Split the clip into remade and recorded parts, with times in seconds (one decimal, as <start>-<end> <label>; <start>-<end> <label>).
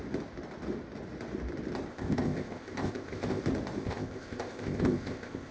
0.0-1.9 recorded; 1.9-3.4 remade; 3.4-3.8 recorded; 3.8-5.5 remade